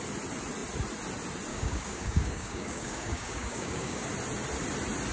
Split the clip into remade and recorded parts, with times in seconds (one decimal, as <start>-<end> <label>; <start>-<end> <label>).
0.0-1.5 recorded; 1.5-4.1 remade; 4.1-5.1 recorded